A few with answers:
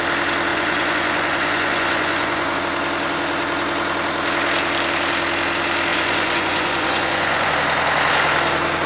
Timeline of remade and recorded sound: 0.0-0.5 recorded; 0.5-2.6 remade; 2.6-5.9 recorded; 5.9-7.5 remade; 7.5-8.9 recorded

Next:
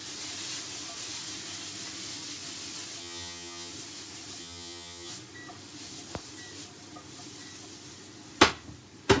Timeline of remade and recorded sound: 0.0-3.0 recorded; 3.0-3.7 remade; 3.7-4.4 recorded; 4.4-5.1 remade; 5.1-9.2 recorded